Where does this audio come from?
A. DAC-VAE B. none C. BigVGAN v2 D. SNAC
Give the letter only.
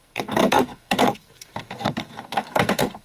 D